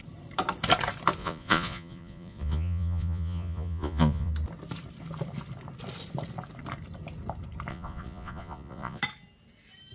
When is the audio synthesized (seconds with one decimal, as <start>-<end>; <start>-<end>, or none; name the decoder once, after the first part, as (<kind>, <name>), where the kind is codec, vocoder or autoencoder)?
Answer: 1.2-4.3 (vocoder, Vocos); 7.7-9.0

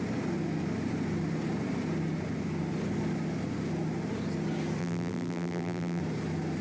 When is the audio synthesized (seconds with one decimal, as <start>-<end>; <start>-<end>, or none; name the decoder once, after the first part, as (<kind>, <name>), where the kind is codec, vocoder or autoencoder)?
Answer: 4.8-6.0 (vocoder, BigVGAN v2)

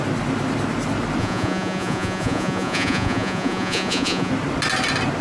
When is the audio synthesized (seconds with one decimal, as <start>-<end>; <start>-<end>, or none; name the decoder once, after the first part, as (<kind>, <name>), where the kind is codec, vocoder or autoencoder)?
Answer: 1.2-4.3 (vocoder, Vocos)

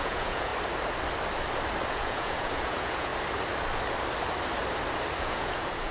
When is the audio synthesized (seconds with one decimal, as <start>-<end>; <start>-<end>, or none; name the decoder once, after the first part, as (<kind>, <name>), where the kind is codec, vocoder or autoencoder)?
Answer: 0.0-0.5 (vocoder, Vocos); 1.9-3.1; 5.2-5.9

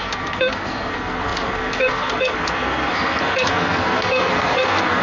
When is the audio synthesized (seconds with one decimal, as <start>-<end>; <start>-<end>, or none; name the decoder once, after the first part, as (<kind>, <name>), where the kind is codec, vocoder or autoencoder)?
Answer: 0.0-5.0 (codec, SNAC)